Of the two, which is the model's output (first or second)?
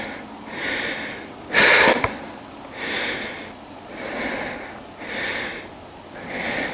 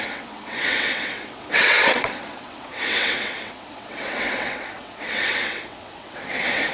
second